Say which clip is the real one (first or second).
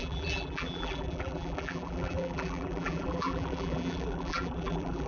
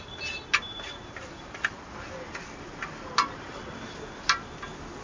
second